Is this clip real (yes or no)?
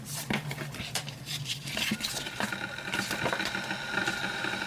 yes